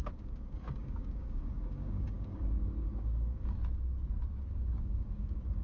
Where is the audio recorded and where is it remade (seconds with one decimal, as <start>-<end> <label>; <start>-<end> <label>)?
0.0-3.6 remade; 3.6-4.4 recorded; 4.4-5.6 remade